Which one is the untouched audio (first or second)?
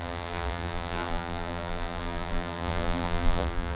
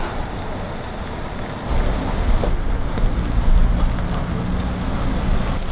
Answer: second